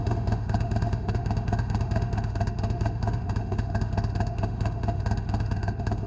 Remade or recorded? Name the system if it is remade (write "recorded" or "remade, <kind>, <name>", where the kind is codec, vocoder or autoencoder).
remade, autoencoder, DAC-VAE